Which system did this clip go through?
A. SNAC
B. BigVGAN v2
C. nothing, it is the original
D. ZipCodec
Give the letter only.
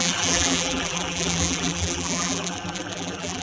B